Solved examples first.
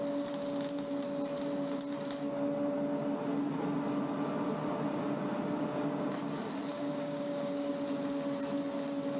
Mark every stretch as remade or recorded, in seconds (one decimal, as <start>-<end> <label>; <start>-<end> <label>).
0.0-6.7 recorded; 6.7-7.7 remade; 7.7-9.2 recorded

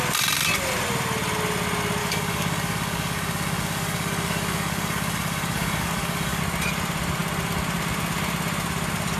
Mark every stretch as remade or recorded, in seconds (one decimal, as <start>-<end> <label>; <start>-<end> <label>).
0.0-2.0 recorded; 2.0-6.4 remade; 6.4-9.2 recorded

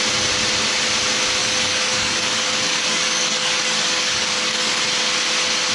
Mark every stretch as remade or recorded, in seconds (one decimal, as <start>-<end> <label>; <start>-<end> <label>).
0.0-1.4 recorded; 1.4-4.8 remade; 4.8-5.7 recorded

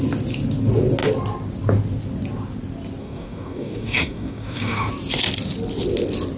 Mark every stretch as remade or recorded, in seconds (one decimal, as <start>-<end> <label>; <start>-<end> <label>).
0.0-3.0 recorded; 3.0-4.9 remade; 4.9-6.4 recorded

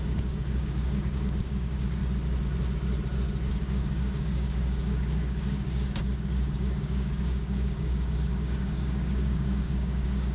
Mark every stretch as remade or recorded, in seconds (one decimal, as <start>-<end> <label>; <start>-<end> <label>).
0.0-2.0 remade; 2.0-3.5 recorded; 3.5-10.3 remade

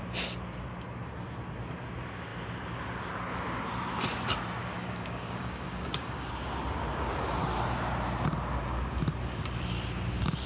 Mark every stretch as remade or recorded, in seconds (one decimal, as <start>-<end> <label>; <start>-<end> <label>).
0.0-4.6 recorded; 4.6-6.3 remade; 6.3-10.5 recorded